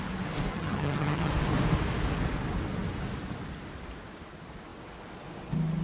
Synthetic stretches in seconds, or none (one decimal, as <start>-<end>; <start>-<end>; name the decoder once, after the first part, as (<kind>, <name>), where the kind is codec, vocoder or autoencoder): 0.5-1.3 (vocoder, HiFi-GAN)